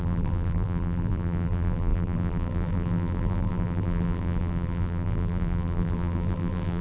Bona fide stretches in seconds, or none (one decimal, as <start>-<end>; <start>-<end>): none